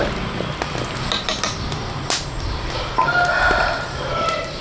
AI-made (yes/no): no